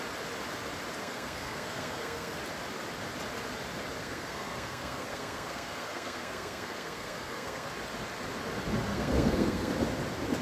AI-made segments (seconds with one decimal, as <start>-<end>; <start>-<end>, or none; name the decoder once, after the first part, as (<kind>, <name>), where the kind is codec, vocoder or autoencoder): 1.0-2.4 (codec, SNAC); 4.0-7.7; 8.9-9.7

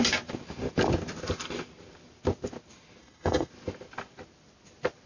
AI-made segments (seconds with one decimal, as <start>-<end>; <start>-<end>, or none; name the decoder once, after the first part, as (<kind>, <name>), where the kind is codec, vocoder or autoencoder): 3.0-3.5 (codec, SNAC)

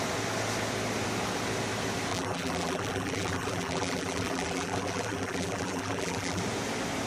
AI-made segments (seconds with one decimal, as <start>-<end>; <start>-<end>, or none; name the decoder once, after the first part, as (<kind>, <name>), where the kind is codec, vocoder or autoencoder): 2.1-6.4 (vocoder, BigVGAN v2)

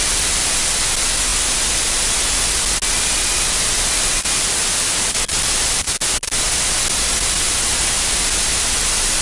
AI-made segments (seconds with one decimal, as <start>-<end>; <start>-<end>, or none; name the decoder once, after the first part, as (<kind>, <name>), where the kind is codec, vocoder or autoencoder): none